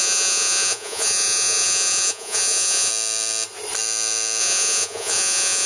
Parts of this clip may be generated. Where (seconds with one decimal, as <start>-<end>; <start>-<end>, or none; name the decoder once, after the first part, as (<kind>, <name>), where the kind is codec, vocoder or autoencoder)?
0.0-2.9 (vocoder, Vocos); 4.4-5.7